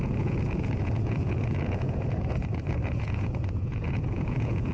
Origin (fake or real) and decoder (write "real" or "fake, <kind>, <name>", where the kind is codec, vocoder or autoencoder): fake, vocoder, Vocos